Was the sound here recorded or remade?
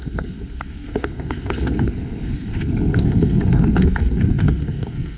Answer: remade